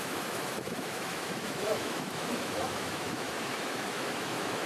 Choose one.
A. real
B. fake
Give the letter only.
B